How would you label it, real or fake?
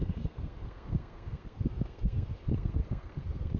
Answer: fake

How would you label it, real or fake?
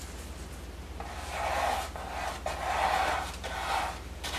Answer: real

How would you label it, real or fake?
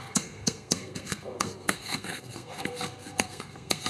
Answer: fake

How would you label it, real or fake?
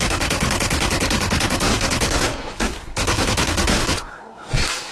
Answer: fake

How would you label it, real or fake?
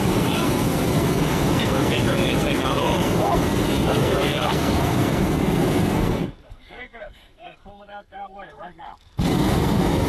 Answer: fake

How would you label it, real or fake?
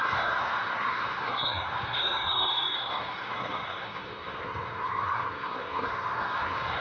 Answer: fake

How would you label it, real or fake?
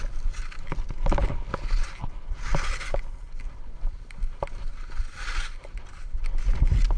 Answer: real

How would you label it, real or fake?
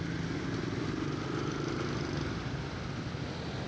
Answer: real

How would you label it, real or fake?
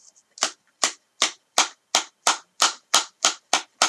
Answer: real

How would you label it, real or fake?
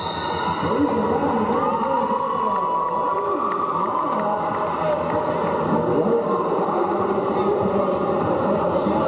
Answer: real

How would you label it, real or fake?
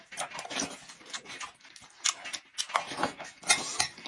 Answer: real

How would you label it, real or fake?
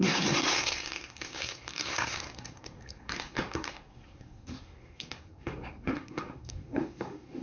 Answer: fake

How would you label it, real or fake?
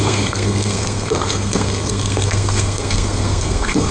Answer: fake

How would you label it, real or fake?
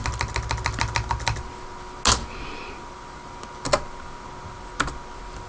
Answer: real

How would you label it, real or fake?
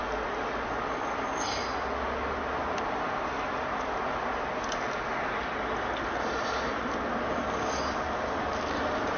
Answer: real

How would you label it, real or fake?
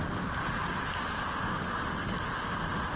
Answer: real